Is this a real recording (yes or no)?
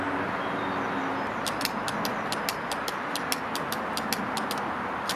yes